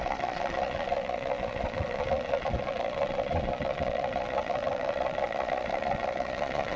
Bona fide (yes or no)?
no